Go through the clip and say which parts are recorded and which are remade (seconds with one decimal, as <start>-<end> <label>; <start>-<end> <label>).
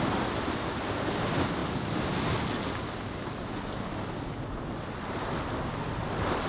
0.0-6.5 recorded